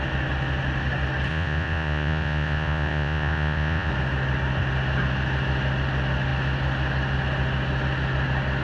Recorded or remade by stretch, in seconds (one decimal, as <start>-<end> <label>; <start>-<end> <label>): 0.0-1.3 recorded; 1.3-3.9 remade; 3.9-8.6 recorded